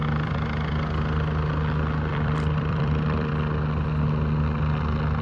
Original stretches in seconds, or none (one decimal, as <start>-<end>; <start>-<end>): 0.7-2.1; 3.3-5.2